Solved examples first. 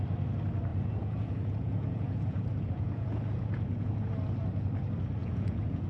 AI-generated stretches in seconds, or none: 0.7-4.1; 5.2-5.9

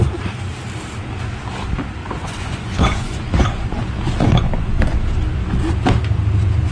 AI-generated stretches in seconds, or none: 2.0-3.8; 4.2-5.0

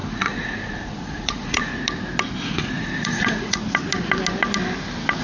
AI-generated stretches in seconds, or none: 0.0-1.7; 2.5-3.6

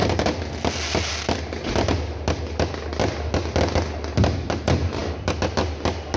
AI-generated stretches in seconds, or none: none